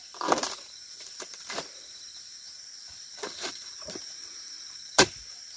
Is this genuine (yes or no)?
no